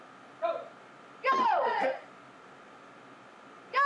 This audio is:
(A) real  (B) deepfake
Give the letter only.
A